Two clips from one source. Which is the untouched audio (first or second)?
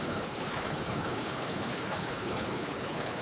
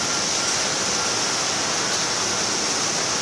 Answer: second